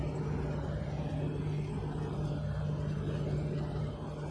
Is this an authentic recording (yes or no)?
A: yes